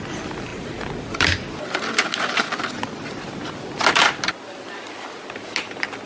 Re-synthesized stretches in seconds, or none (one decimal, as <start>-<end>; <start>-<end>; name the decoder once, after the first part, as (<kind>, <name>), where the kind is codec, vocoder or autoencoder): none